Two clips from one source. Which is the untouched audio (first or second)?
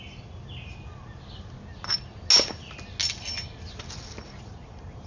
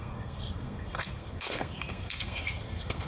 first